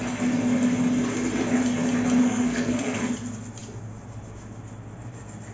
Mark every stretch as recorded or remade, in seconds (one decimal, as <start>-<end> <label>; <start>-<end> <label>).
0.0-2.2 recorded; 2.2-3.0 remade; 3.0-5.5 recorded